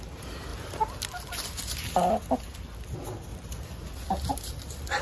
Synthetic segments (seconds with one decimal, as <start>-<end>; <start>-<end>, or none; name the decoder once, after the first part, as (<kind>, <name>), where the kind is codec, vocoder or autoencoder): none